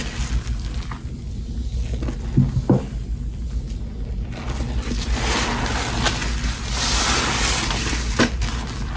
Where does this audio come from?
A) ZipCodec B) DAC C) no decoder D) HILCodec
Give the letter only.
C